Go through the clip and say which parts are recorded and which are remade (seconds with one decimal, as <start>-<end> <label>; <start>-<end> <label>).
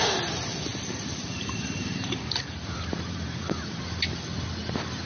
0.0-0.7 recorded; 0.7-3.8 remade; 3.8-5.1 recorded